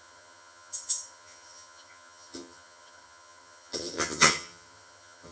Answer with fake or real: fake